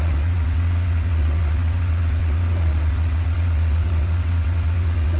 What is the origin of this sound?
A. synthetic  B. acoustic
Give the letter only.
A